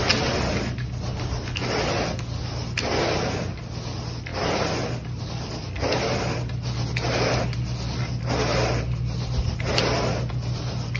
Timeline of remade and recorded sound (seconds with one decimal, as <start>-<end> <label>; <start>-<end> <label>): 0.0-11.0 recorded